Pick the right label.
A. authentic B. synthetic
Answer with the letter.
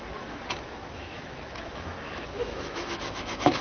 B